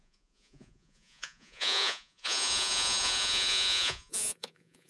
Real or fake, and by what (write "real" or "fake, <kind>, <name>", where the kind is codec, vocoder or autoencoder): fake, vocoder, Vocos